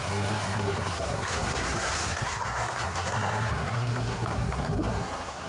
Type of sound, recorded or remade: remade